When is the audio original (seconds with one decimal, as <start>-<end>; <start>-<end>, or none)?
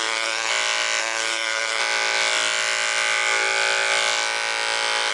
0.5-1.0; 1.8-5.1